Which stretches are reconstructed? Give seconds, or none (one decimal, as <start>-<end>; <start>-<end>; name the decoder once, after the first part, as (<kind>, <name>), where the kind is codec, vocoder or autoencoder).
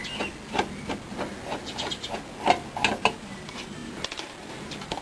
3.0-5.0 (vocoder, BigVGAN v2)